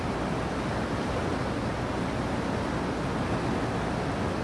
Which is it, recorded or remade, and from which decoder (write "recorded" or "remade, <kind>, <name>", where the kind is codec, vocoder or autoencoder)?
recorded